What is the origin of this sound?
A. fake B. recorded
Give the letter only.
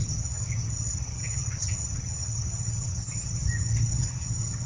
A